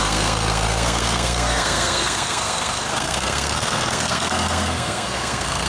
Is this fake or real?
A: fake